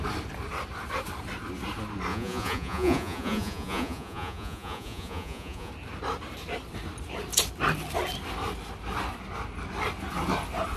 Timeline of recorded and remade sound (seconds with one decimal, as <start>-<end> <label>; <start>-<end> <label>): 0.0-2.1 recorded; 2.1-5.7 remade; 5.7-10.8 recorded